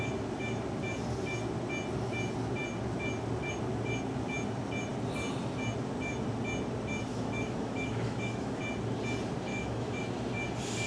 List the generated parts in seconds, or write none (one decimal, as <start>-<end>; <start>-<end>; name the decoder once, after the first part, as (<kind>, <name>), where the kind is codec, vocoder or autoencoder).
7.1-8.6 (autoencoder, DAC-VAE); 9.5-10.0